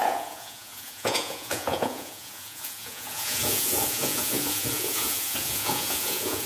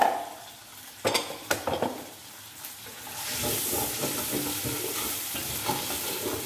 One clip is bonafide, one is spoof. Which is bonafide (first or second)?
second